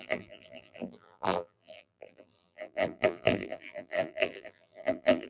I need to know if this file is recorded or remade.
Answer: remade